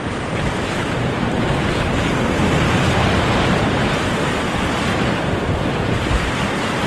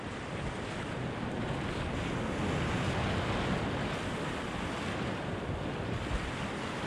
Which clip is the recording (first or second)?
second